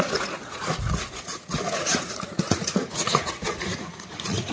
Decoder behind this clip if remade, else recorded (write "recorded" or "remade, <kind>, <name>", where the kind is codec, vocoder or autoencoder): remade, vocoder, Vocos